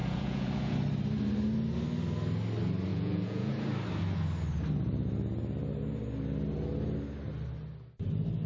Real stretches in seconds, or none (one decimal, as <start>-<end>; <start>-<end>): 0.7-2.9; 3.5-8.5